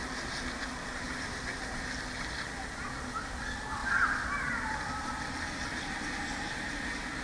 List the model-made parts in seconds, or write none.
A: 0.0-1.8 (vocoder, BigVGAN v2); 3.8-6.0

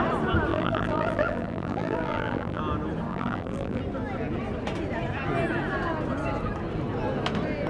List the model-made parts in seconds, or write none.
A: 0.5-2.6 (vocoder, BigVGAN v2); 3.1-3.8

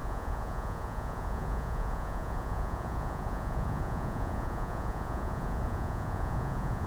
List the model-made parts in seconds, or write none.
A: 0.0-6.9 (vocoder, Vocos)

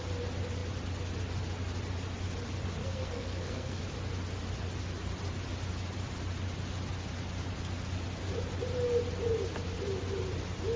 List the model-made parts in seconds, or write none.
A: 2.8-3.8 (codec, SNAC)